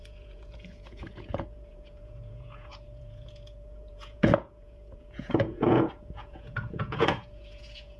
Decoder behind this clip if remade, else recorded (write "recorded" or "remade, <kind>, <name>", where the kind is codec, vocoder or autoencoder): remade, vocoder, Vocos